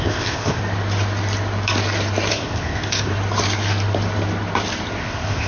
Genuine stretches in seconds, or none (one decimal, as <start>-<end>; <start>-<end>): 0.6-2.3; 3.1-5.0